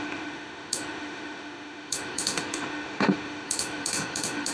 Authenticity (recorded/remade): remade